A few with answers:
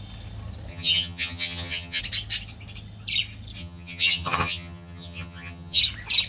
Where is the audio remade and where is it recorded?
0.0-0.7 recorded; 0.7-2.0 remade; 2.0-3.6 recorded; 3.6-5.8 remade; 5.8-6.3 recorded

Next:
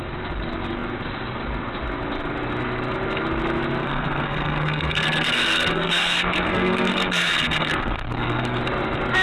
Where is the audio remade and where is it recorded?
0.0-3.8 recorded; 3.8-8.6 remade; 8.6-9.2 recorded

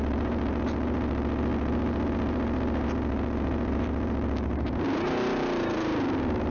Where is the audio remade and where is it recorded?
0.0-6.5 remade